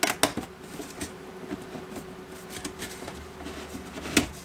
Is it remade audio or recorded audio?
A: recorded